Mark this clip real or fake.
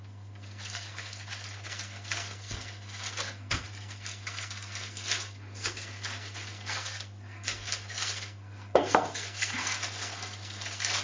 fake